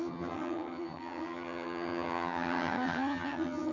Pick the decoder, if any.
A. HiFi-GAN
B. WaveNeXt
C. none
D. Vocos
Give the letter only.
A